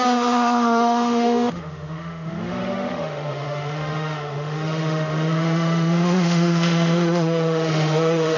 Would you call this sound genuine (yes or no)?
no